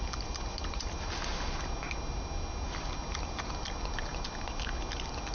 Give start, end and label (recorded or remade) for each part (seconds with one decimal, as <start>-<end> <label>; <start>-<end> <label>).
0.0-5.3 recorded